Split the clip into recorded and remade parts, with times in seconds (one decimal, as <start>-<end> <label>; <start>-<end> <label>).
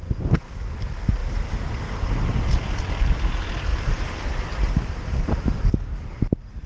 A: 0.0-6.7 recorded